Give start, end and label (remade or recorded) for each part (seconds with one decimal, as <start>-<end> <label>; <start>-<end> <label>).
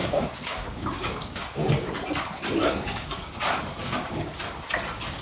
0.0-1.9 remade; 1.9-2.6 recorded; 2.6-3.3 remade; 3.3-3.8 recorded; 3.8-4.4 remade; 4.4-5.2 recorded